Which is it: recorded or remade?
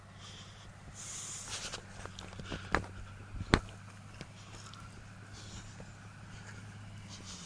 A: recorded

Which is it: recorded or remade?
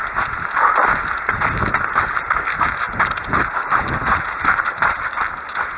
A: recorded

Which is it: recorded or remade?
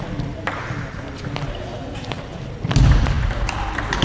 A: recorded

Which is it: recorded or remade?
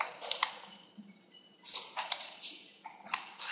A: remade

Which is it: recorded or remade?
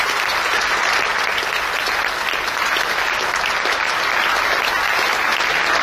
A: recorded